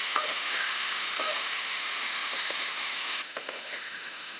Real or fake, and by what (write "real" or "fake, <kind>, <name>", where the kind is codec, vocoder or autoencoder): fake, autoencoder, DAC-VAE